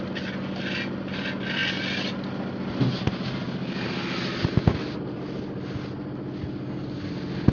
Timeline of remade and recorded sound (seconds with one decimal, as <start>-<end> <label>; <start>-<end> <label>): 0.0-7.5 recorded